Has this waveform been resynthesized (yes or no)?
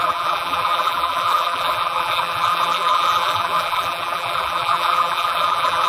yes